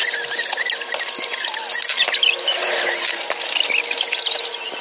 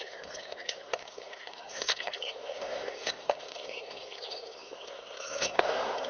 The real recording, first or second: first